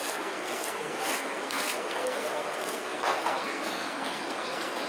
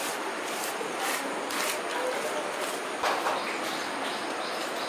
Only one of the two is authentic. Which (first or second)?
second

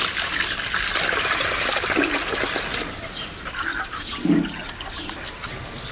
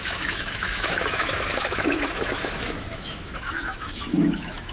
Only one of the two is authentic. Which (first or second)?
first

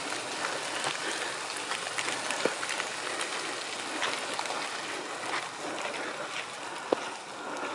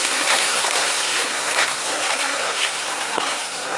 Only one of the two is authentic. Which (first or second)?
first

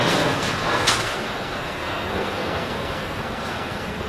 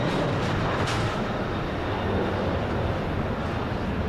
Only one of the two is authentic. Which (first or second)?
second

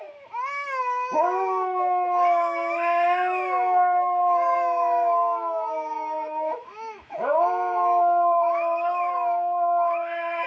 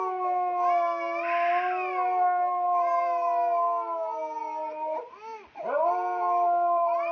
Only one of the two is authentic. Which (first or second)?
second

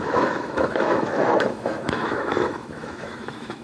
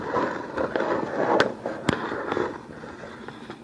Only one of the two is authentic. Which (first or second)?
second